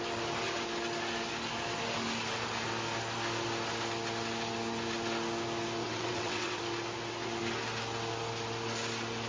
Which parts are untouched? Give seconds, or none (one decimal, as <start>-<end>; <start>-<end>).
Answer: 0.0-5.8; 6.6-9.3